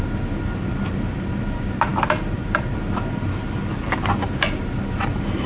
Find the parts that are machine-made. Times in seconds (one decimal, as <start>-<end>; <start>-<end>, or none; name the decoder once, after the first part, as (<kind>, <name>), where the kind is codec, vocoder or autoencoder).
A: none